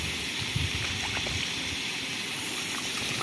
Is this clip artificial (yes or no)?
no